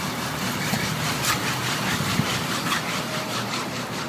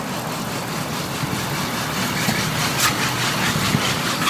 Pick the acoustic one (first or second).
second